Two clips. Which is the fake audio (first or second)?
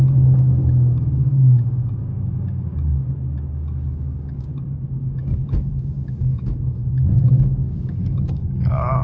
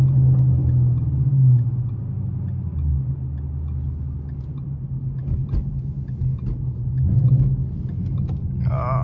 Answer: first